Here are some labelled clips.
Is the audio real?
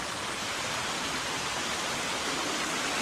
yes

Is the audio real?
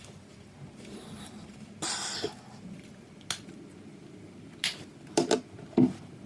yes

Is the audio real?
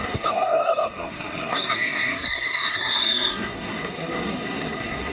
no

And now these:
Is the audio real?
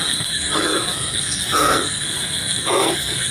no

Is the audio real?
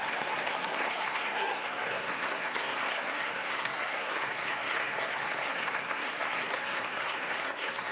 no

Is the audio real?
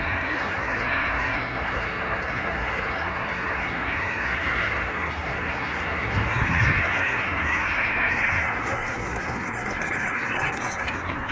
no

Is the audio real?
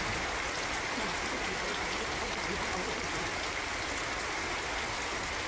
yes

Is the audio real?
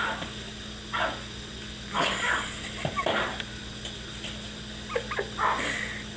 yes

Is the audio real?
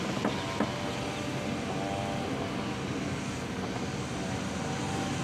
yes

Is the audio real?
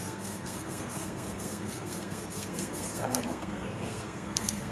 no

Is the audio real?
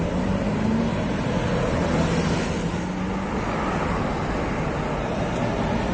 yes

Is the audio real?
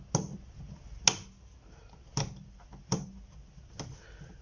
yes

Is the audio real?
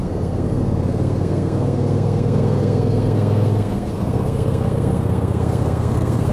no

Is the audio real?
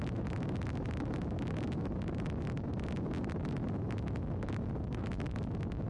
yes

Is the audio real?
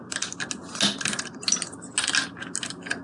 yes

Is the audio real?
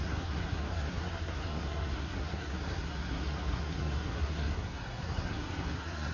no